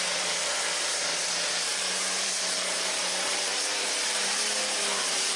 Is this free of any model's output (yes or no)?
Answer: no